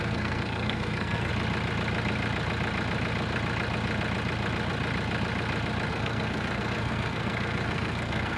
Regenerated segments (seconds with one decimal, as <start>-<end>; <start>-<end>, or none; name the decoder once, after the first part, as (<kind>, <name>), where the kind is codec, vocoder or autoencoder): 0.0-1.3 (codec, SNAC); 5.9-8.4